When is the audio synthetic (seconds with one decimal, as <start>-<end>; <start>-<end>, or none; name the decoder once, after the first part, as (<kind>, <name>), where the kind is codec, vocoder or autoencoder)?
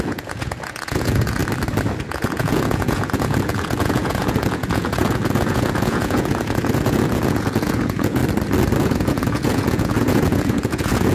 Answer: 0.0-1.4 (vocoder, Vocos); 2.1-8.2; 8.8-11.1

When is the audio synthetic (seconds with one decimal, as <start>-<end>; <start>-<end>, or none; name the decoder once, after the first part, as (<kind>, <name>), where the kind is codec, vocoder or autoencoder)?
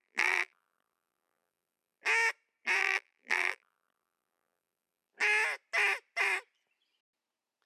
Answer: 0.0-2.0 (vocoder, BigVGAN v2); 2.8-5.1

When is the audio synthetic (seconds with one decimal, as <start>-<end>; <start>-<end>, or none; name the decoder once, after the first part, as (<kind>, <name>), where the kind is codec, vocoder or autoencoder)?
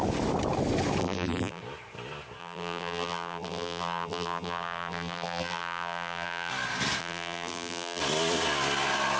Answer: 1.0-1.6 (vocoder, BigVGAN v2); 2.4-6.5; 7.0-8.0